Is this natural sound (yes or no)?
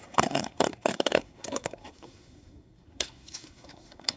no